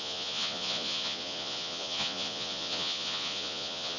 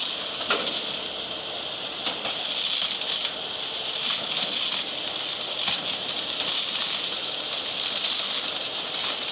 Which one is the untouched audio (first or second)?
second